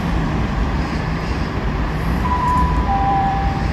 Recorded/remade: remade